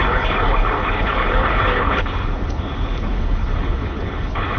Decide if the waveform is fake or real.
fake